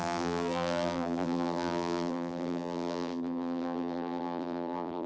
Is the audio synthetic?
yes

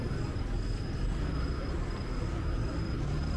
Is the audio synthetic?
no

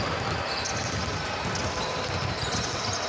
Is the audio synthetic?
no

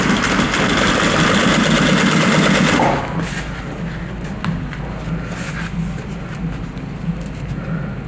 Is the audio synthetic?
no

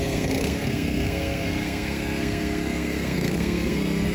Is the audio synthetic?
yes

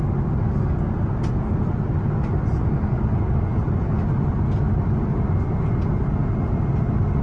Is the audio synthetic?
no